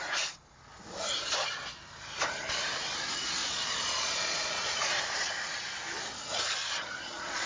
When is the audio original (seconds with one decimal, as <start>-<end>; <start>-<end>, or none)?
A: 0.0-3.4; 5.0-6.6